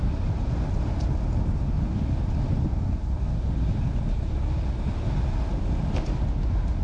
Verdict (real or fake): real